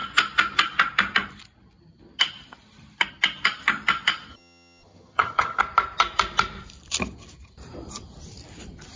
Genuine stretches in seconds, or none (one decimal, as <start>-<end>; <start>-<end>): 0.0-4.3; 5.6-9.0